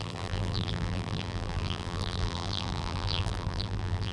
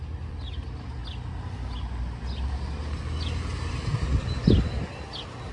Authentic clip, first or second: second